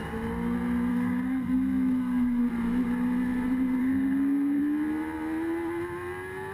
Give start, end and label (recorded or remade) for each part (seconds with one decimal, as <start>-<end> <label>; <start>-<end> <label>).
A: 0.0-0.9 recorded; 0.9-2.5 remade; 2.5-3.8 recorded; 3.8-4.6 remade; 4.6-6.5 recorded